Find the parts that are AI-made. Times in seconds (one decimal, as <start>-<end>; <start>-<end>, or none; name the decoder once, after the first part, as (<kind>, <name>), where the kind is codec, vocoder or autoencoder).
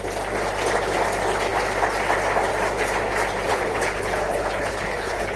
3.5-5.4 (codec, HILCodec)